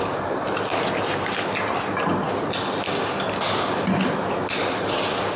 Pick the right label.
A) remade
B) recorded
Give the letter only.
B